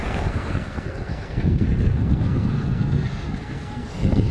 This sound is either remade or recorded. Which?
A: remade